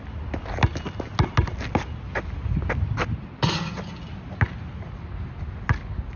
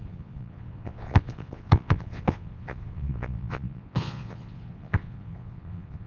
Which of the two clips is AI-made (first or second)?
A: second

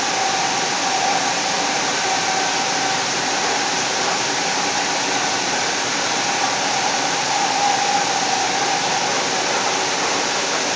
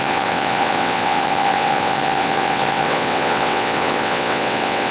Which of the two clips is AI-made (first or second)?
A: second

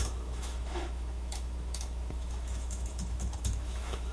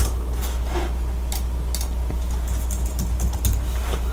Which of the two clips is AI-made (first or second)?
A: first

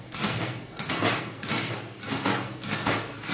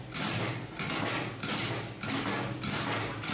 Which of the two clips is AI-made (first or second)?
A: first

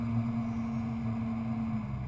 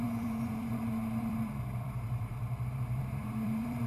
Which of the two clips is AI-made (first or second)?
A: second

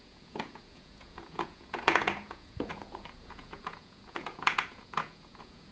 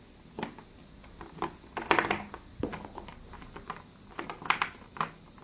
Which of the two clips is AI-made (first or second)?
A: first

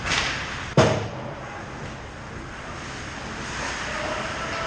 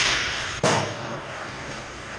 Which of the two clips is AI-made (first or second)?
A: second